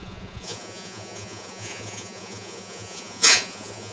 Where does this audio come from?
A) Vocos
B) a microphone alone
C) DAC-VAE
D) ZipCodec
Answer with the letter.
A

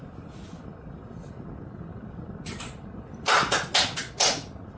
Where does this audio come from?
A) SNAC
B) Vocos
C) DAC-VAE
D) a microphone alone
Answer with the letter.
D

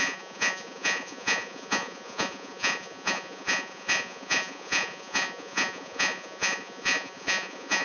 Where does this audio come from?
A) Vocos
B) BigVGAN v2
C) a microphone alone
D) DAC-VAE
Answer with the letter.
A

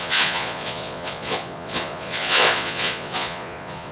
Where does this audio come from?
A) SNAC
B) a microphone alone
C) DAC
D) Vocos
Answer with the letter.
D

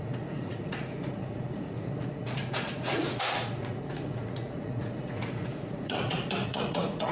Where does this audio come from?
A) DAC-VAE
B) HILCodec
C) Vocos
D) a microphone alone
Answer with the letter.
C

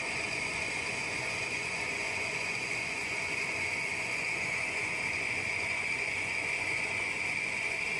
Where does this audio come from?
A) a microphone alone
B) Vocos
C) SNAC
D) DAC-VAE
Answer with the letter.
B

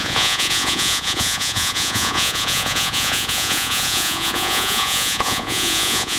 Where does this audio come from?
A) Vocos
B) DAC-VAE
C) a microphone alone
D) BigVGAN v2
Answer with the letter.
A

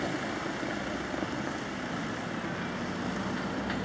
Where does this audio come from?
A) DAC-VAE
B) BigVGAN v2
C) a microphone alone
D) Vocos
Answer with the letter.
C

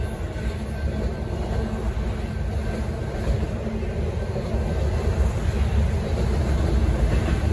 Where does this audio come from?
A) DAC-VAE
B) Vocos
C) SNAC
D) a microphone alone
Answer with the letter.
D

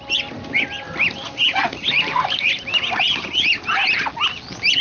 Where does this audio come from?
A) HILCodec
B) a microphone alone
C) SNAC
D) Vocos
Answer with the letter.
B